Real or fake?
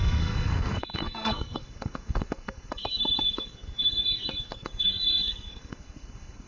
fake